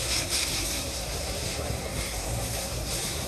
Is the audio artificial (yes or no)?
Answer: yes